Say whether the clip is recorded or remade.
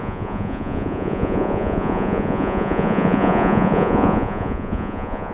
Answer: remade